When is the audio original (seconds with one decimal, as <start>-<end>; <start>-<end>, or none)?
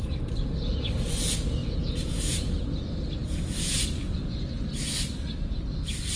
0.0-1.6; 2.5-3.2; 4.6-6.2